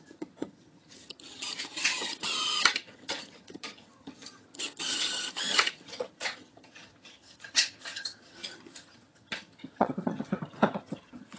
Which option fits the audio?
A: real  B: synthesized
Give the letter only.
B